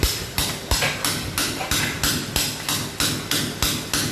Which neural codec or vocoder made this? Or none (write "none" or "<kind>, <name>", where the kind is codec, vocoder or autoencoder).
none